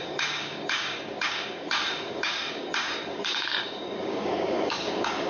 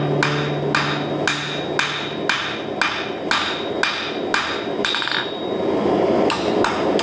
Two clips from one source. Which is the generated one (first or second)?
first